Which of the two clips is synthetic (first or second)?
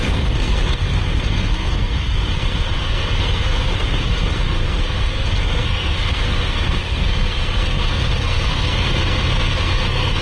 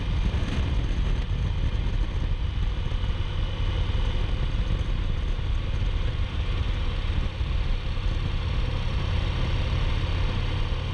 first